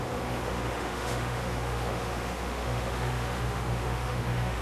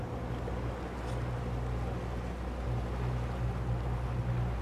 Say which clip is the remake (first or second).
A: first